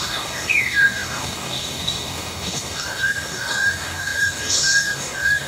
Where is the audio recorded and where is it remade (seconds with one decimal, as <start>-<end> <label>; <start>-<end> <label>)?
0.0-5.5 remade